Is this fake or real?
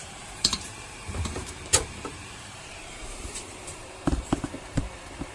fake